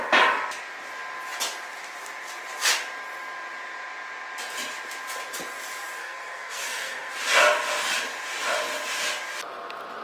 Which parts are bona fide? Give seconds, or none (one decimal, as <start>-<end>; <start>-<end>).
0.0-6.0; 7.1-10.0